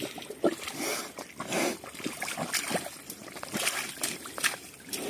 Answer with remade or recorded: recorded